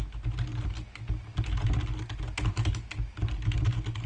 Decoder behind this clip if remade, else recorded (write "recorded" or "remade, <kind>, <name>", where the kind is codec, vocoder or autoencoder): recorded